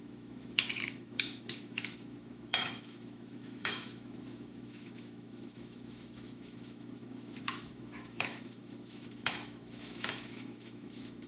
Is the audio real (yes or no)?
no